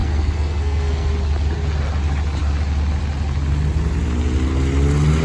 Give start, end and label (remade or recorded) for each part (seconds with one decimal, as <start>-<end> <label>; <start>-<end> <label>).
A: 0.0-1.1 remade; 1.1-5.2 recorded